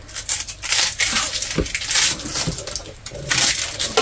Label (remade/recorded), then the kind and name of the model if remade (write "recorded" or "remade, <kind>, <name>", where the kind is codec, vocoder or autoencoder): recorded